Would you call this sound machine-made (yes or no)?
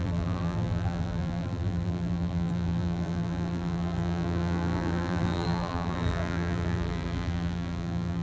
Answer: yes